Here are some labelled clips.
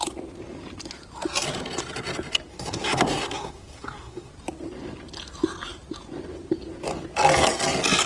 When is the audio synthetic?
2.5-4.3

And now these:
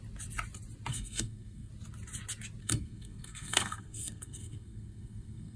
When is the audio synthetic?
0.9-1.7; 2.6-5.6

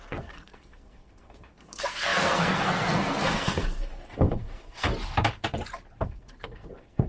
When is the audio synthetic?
0.0-4.9; 6.0-7.1

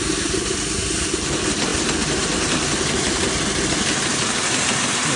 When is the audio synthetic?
none

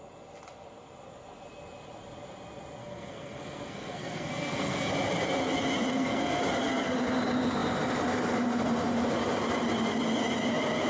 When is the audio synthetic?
2.8-4.9; 5.9-6.4

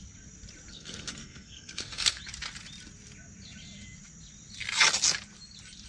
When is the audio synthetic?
0.7-2.2

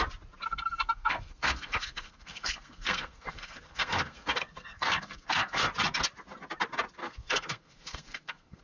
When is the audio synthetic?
0.5-5.7; 7.0-8.6

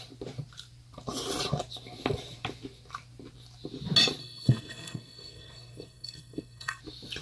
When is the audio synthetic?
4.2-6.8